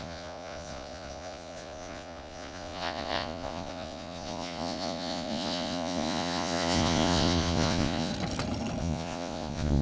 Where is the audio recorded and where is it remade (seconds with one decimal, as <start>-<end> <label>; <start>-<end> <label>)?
0.0-8.1 remade; 8.1-8.8 recorded; 8.8-9.8 remade